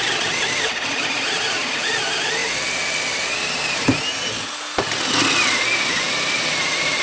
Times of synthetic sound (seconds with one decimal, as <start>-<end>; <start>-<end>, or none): none